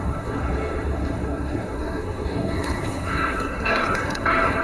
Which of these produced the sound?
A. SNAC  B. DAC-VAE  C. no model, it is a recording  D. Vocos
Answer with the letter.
A